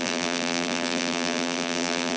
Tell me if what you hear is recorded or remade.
remade